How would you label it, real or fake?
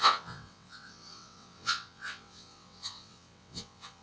fake